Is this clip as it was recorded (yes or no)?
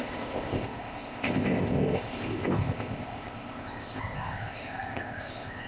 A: no